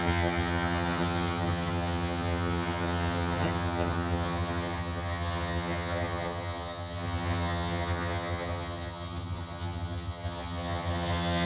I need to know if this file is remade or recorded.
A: remade